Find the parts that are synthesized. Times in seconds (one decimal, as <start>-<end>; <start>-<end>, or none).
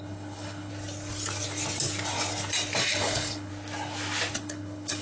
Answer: 0.0-0.7; 2.9-3.5; 4.4-5.0